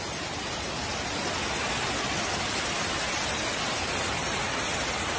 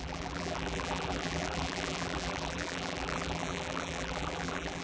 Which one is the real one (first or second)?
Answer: first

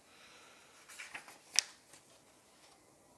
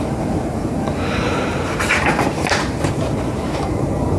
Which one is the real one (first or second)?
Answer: first